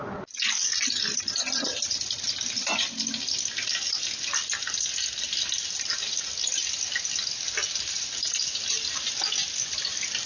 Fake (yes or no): no